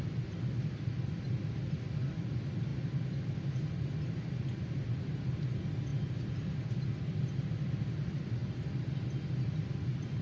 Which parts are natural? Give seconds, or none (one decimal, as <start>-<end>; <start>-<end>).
0.0-10.2